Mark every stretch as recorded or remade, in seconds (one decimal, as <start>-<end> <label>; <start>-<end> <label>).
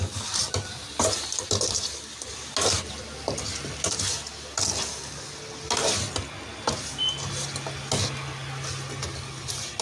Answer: 0.0-9.8 recorded